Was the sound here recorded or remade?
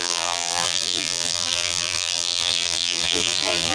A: remade